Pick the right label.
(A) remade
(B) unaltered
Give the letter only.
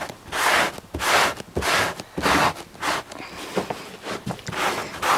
B